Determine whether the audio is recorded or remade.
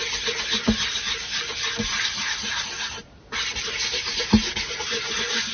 recorded